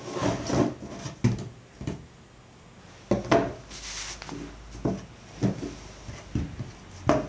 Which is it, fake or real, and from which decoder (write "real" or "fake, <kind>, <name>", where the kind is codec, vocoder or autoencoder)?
real